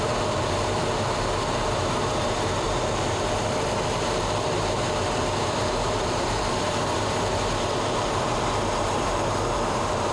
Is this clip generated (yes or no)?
yes